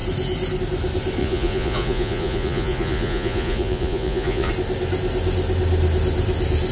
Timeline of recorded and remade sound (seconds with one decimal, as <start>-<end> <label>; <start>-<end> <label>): 0.0-1.2 recorded; 1.2-4.5 remade; 4.5-6.7 recorded